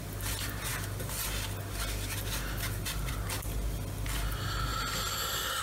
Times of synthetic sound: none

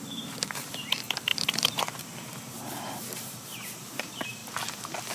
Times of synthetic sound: 0.0-4.4 (vocoder, BigVGAN v2)